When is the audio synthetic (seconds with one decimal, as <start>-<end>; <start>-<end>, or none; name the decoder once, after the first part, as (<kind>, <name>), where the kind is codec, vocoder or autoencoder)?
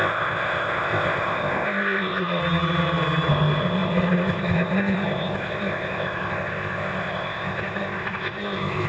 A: 0.0-2.4 (codec, ZipCodec); 3.3-8.9